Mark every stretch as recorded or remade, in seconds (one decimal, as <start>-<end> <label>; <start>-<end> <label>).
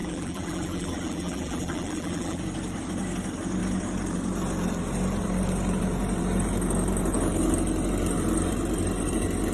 0.0-2.4 remade; 2.4-9.5 recorded